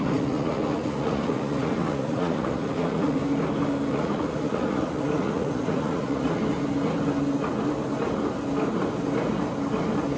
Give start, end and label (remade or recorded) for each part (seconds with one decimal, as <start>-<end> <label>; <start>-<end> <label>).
0.0-3.2 remade; 3.2-3.9 recorded; 3.9-6.4 remade; 6.4-10.2 recorded